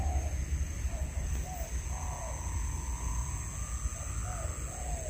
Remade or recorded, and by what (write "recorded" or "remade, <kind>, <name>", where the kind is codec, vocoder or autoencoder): recorded